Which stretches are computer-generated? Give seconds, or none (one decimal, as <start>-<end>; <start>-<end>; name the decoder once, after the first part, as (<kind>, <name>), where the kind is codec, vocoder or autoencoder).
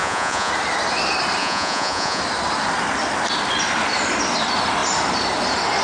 0.0-0.5 (vocoder, Vocos); 1.4-2.2